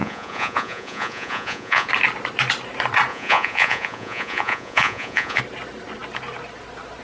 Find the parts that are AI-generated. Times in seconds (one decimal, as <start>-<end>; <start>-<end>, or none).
0.0-1.9; 3.1-5.4